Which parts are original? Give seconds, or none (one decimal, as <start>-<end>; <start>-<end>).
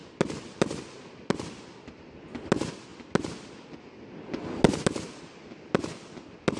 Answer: 0.0-6.6